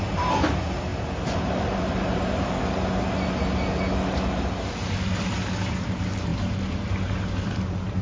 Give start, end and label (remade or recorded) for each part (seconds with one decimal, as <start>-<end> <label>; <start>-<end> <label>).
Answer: 0.0-2.6 remade; 2.6-5.6 recorded; 5.6-8.0 remade